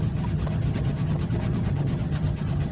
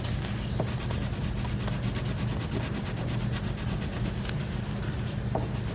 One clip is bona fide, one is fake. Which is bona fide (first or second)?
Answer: second